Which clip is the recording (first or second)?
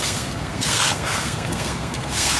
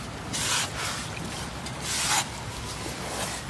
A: second